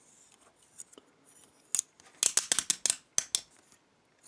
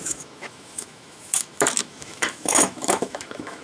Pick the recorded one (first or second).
first